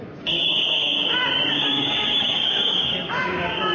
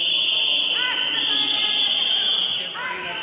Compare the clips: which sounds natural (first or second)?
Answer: second